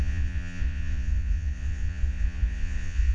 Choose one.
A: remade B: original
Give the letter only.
A